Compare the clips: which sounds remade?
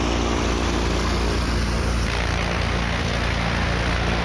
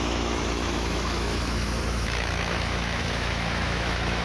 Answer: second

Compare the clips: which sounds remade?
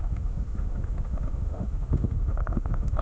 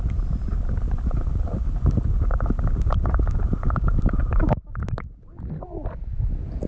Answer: first